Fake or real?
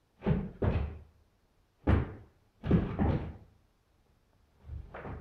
real